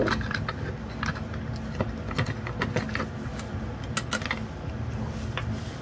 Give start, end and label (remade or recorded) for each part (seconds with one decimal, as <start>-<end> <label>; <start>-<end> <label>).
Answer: 0.0-5.8 recorded